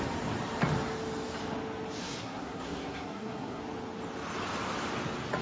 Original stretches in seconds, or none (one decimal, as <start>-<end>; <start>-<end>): 0.0-2.0; 3.6-5.4